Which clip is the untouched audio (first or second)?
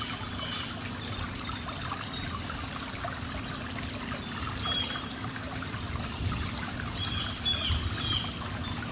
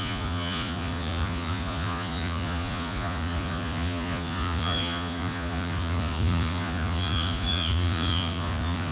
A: first